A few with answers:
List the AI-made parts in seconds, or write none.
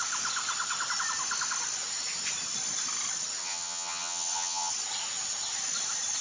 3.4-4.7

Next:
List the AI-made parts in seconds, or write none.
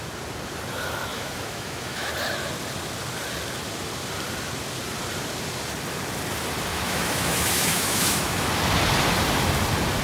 1.1-2.1; 6.7-8.4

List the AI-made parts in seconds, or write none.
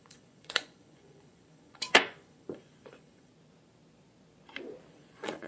0.0-3.3; 4.9-5.5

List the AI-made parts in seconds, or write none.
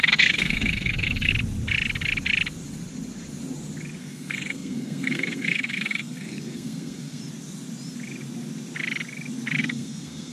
0.0-1.3; 4.0-7.2; 9.6-10.3